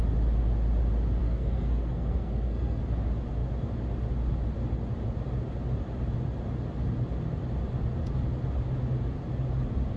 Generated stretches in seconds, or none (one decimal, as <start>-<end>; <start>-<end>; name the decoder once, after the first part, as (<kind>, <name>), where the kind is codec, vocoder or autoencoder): 1.2-2.8 (codec, SNAC)